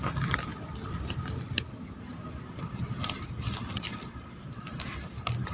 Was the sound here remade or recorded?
recorded